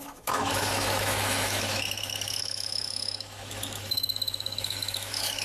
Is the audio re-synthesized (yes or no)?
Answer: yes